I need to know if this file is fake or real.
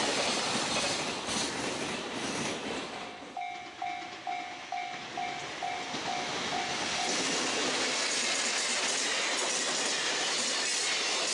real